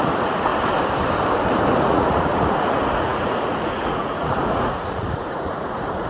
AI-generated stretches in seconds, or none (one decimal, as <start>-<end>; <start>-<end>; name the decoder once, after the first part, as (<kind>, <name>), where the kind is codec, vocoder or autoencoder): 0.0-0.5 (vocoder, Vocos); 1.8-6.1